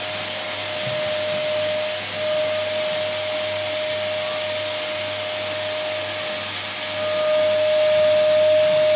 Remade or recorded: recorded